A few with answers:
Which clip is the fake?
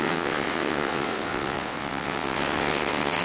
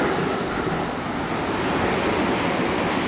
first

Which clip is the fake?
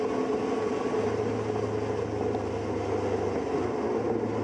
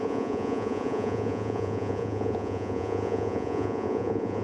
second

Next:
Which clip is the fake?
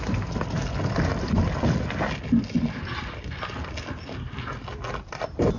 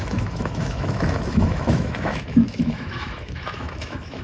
second